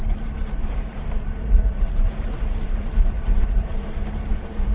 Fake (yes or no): yes